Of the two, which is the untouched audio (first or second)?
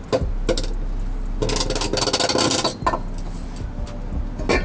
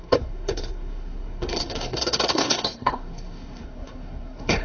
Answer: first